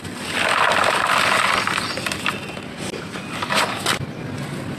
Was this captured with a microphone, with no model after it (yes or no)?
yes